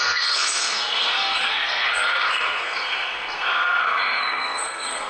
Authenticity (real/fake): fake